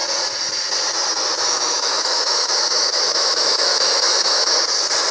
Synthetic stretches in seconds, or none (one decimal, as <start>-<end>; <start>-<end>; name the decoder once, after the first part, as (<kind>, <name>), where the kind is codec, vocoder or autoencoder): 1.5-4.6 (autoencoder, DAC-VAE)

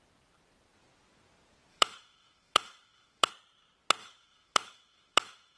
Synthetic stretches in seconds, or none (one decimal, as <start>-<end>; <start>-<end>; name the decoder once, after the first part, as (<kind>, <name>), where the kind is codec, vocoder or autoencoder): 1.7-3.3 (autoencoder, DAC-VAE); 4.0-5.6